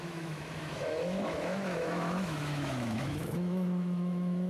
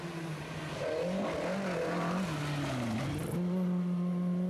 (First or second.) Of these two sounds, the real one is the second